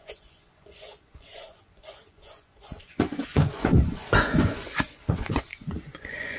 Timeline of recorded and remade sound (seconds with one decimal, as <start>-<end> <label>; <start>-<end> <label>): 0.0-6.4 remade